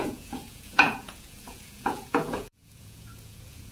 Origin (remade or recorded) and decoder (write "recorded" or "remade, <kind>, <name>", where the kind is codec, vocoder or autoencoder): remade, vocoder, Vocos